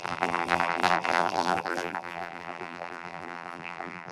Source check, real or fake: fake